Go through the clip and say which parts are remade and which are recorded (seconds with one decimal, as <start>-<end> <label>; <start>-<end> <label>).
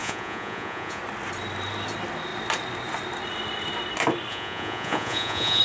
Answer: 0.0-1.0 remade; 1.0-4.3 recorded; 4.3-5.6 remade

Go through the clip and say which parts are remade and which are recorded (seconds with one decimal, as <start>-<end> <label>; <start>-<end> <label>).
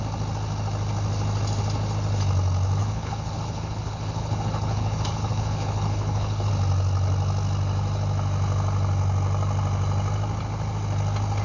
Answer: 0.0-2.8 recorded; 2.8-6.5 remade; 6.5-11.4 recorded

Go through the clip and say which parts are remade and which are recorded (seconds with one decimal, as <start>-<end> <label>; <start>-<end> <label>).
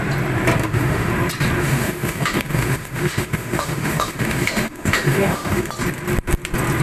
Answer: 0.0-0.6 recorded; 0.6-1.1 remade; 1.1-1.6 recorded; 1.6-5.7 remade; 5.7-6.8 recorded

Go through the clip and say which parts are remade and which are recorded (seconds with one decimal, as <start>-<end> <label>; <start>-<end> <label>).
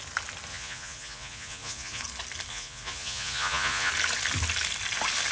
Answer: 0.0-0.5 recorded; 0.5-2.0 remade; 2.0-2.5 recorded; 2.5-3.9 remade; 3.9-5.3 recorded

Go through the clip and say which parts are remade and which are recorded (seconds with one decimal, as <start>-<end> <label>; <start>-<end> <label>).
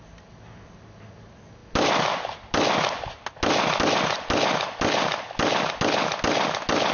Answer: 0.0-6.9 recorded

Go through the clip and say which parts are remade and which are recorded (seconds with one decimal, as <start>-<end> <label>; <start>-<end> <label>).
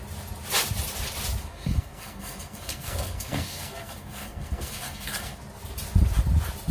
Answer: 0.0-1.4 recorded; 1.4-5.4 remade; 5.4-6.7 recorded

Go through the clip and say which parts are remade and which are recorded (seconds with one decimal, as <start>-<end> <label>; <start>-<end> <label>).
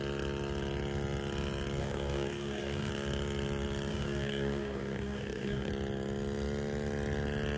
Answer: 0.0-1.8 recorded; 1.8-2.9 remade; 2.9-3.9 recorded; 3.9-5.7 remade; 5.7-7.6 recorded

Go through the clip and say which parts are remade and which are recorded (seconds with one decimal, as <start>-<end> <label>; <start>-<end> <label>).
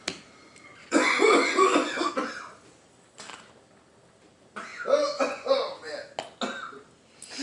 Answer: 0.0-0.8 recorded; 0.8-2.1 remade; 2.1-4.7 recorded; 4.7-5.9 remade; 5.9-7.4 recorded